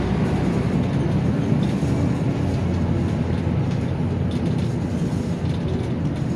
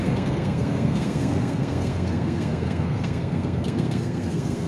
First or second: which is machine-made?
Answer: second